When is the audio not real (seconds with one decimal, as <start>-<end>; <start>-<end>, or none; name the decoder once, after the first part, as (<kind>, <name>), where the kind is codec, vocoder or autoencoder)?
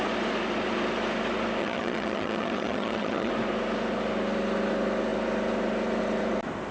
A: 1.6-3.3 (vocoder, HiFi-GAN)